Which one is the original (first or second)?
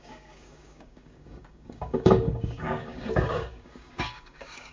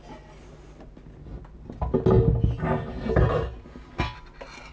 second